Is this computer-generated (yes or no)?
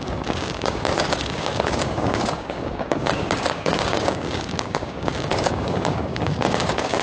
yes